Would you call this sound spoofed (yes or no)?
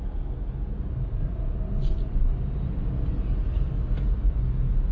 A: no